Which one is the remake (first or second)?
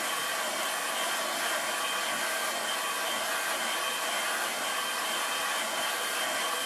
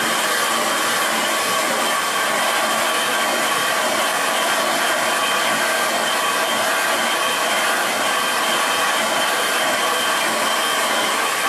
second